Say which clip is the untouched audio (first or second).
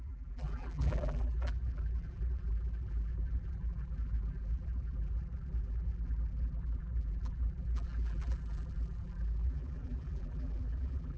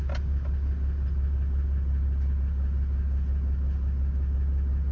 second